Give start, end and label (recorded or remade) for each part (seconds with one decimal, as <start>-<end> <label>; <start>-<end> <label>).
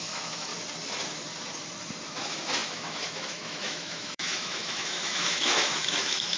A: 0.0-0.5 remade; 0.5-2.1 recorded; 2.1-6.4 remade